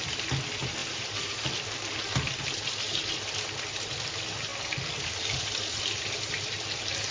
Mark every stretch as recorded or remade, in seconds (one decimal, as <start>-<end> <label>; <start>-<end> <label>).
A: 0.0-0.8 recorded; 0.8-1.5 remade; 1.5-7.1 recorded